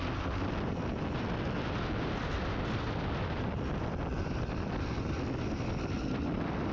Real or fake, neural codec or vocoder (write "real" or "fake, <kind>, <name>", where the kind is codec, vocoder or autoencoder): real